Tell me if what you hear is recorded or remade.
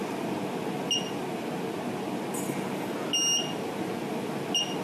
recorded